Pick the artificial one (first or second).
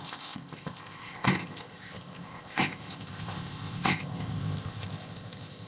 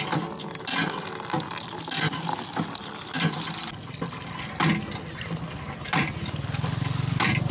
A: first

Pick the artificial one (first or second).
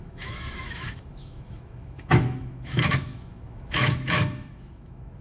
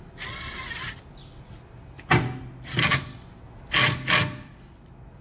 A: first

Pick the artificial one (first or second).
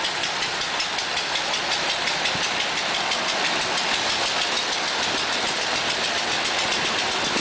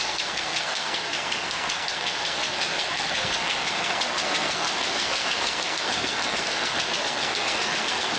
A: second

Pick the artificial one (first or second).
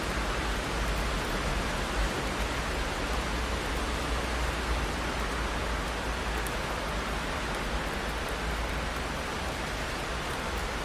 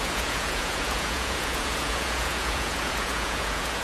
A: second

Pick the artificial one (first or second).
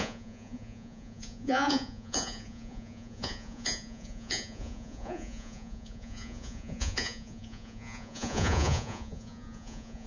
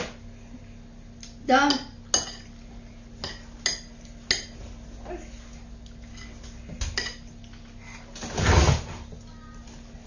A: first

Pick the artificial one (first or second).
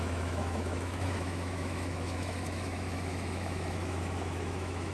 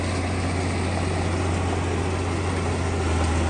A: first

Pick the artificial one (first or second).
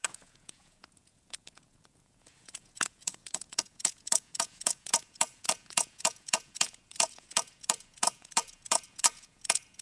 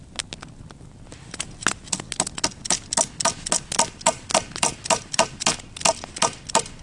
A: first